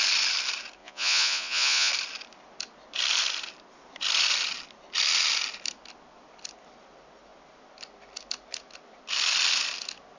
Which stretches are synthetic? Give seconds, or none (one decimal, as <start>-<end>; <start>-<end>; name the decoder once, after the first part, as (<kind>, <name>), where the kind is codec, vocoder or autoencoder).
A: 0.8-1.9 (vocoder, Vocos)

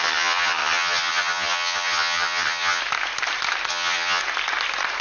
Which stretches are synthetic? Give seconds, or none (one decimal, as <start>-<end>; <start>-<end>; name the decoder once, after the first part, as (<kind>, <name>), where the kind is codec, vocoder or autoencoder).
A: 0.0-2.8 (vocoder, HiFi-GAN); 3.7-4.2

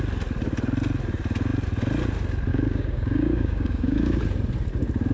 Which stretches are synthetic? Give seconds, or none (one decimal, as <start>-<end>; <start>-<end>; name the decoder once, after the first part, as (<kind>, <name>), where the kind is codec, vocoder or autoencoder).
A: 2.5-4.2 (codec, DAC)

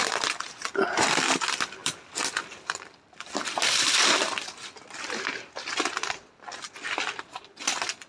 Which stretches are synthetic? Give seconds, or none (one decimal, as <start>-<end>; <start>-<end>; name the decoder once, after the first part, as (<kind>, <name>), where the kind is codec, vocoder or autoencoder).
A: 1.8-6.7 (vocoder, BigVGAN v2)